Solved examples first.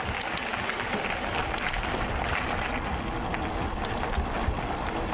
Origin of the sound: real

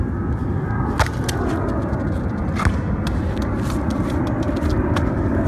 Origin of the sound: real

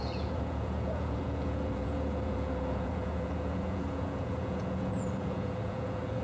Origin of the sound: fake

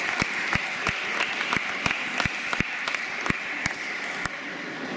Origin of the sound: real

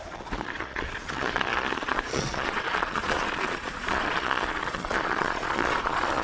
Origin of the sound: fake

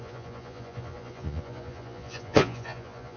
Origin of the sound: fake